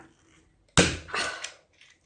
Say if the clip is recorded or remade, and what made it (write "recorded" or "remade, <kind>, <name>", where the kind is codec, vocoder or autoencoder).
recorded